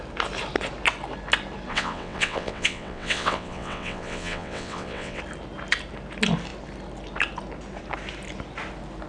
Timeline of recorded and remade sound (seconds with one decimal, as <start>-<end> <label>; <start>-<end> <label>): 0.0-1.7 recorded; 1.7-5.2 remade; 5.2-9.1 recorded